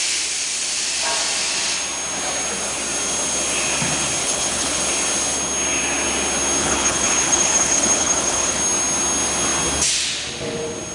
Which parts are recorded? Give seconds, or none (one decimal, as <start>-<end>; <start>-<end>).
0.0-4.2; 4.8-6.6; 8.6-10.9